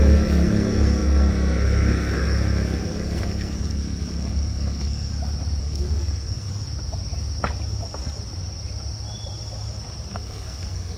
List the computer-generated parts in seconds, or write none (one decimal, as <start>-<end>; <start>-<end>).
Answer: 0.0-5.1; 5.6-6.5; 10.1-11.0